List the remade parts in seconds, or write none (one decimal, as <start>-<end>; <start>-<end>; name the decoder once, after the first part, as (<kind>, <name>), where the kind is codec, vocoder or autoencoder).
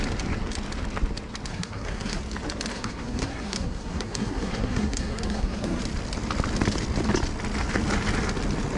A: 1.5-2.2 (codec, SNAC); 2.7-5.8